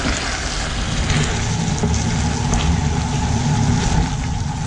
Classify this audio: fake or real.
real